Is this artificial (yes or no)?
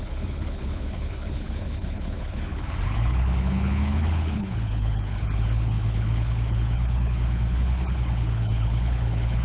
yes